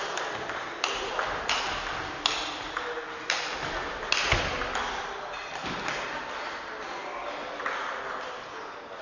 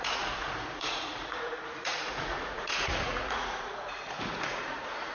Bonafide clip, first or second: first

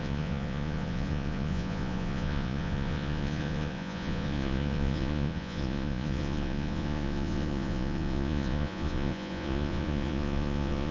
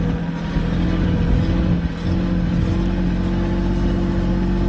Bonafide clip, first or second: second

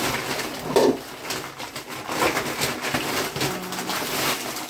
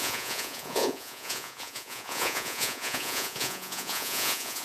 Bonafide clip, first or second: first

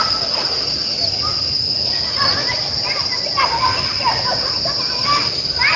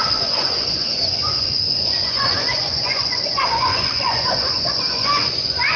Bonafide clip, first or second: first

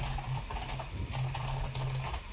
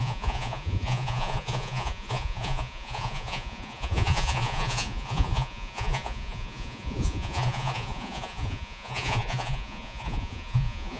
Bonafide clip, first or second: first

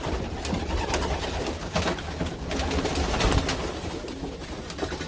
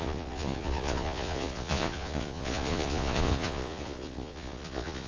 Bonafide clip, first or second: first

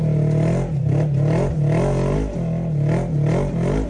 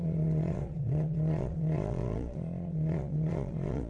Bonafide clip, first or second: first